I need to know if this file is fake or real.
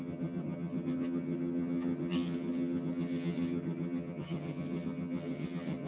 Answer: fake